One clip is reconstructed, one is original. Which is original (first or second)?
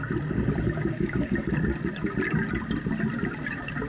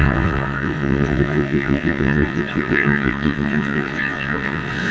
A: first